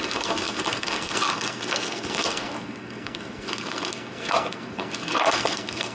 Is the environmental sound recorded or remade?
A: remade